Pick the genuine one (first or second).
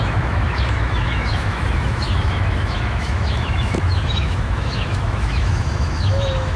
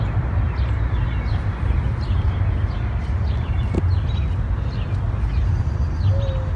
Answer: second